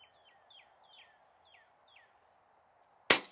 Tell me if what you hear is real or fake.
real